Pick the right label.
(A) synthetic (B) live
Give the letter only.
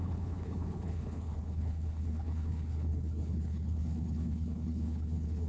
A